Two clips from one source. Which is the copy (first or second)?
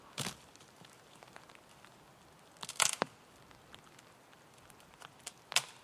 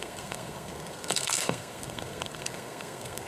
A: second